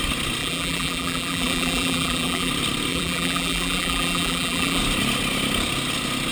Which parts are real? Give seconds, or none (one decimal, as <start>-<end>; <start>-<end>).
0.0-0.4; 2.5-2.9; 4.8-6.3